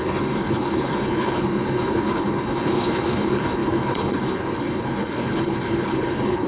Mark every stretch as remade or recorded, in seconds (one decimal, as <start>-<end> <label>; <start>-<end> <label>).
0.0-6.5 remade